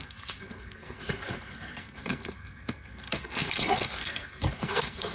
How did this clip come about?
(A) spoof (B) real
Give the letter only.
A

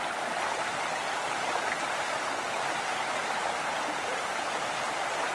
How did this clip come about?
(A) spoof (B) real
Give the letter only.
B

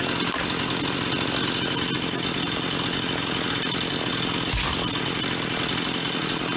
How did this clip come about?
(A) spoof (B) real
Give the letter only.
B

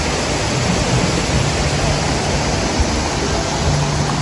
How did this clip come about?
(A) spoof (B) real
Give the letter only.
B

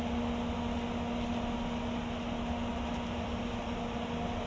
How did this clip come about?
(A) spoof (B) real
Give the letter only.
B